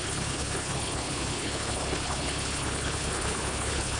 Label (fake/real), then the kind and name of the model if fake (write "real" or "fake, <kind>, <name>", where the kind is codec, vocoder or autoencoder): fake, codec, HILCodec